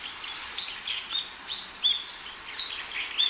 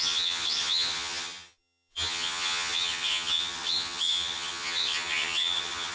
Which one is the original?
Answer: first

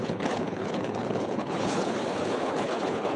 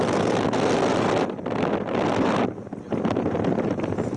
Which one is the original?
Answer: second